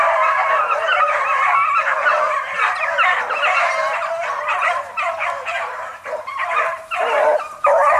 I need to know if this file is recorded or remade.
remade